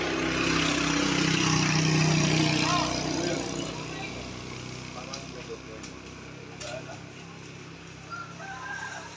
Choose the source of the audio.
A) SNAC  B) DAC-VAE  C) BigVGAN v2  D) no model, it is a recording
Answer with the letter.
D